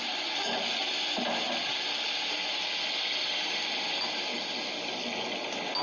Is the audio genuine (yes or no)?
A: yes